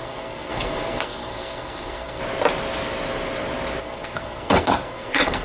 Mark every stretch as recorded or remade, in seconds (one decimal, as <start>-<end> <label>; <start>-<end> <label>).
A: 0.0-2.2 remade; 2.2-3.8 recorded; 3.8-5.4 remade